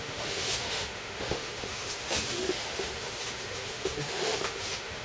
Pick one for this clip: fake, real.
fake